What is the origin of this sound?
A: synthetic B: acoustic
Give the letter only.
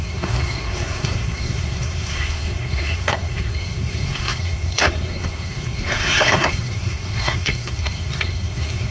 A